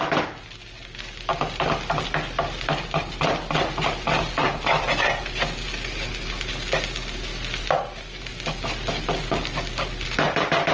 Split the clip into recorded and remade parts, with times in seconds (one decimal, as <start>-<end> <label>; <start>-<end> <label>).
0.0-10.7 recorded